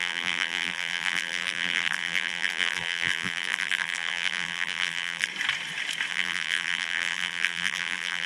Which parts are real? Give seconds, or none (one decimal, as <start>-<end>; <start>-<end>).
5.3-6.1

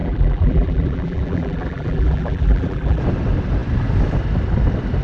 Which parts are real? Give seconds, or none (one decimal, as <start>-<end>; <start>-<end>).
3.0-5.0

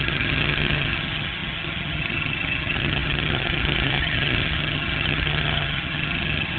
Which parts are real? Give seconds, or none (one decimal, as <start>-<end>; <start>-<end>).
none

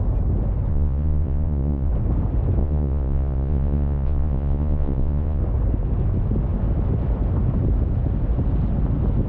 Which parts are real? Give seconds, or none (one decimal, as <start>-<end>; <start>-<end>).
0.0-0.7; 1.9-2.6; 5.4-9.3

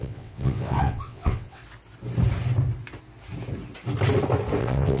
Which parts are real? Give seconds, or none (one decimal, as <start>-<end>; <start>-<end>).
1.6-4.6